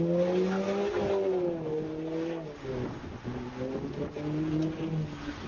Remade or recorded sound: recorded